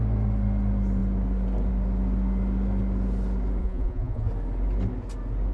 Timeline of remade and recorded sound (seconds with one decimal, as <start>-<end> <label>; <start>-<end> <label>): 0.0-3.6 recorded; 3.6-4.3 remade; 4.3-5.5 recorded